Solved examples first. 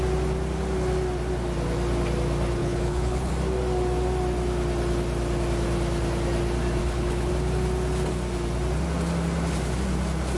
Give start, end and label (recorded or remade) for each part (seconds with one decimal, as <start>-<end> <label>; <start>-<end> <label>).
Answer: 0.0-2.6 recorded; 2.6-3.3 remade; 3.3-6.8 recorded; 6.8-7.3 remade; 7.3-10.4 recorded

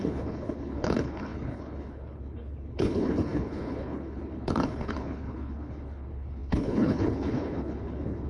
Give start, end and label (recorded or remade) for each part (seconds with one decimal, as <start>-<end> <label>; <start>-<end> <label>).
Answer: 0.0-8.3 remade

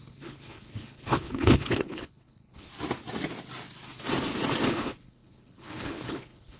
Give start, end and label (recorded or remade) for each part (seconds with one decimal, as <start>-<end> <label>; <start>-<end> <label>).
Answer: 0.0-2.7 remade; 2.7-4.7 recorded; 4.7-6.6 remade

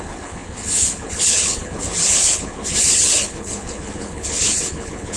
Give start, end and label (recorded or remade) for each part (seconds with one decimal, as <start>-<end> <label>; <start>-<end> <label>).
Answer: 0.0-5.2 remade

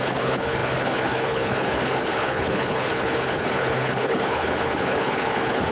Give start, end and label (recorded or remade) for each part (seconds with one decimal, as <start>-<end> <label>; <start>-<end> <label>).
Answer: 0.0-5.7 remade

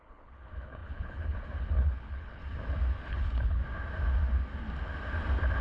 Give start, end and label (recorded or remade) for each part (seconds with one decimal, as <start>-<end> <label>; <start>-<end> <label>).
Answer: 0.0-2.4 remade; 2.4-3.1 recorded; 3.1-3.6 remade; 3.6-5.6 recorded

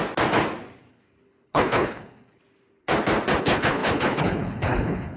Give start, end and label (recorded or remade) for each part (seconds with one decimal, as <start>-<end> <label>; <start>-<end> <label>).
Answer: 0.0-0.9 recorded; 0.9-2.4 remade; 2.4-3.4 recorded; 3.4-5.2 remade

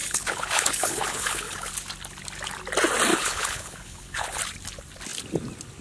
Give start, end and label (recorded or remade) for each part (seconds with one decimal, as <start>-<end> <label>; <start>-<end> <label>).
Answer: 0.0-1.7 remade; 1.7-3.1 recorded; 3.1-4.4 remade; 4.4-5.8 recorded